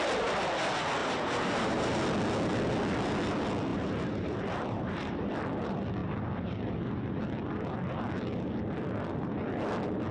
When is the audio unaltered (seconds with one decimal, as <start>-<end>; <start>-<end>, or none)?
0.0-1.0; 1.9-3.7; 5.3-10.1